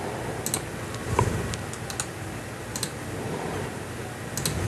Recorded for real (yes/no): yes